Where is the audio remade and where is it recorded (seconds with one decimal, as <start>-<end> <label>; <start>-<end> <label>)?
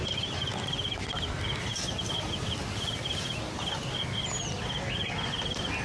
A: 0.0-5.8 recorded